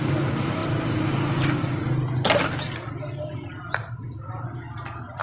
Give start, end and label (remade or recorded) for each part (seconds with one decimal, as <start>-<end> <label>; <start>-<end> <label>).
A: 0.0-5.2 recorded